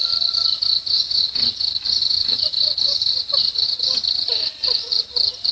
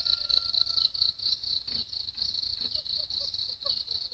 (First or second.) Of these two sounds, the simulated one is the second